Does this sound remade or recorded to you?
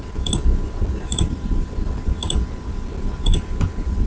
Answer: recorded